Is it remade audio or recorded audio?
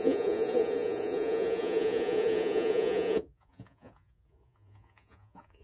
remade